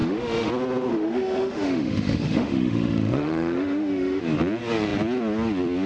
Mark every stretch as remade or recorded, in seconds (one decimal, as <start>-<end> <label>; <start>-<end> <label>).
0.0-0.5 remade; 0.5-0.9 recorded; 0.9-4.2 remade; 4.2-5.9 recorded